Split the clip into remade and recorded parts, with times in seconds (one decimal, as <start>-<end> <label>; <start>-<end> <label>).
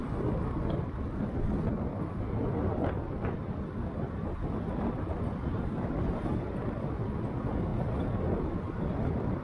0.0-0.8 recorded; 0.8-7.7 remade; 7.7-8.4 recorded; 8.4-9.4 remade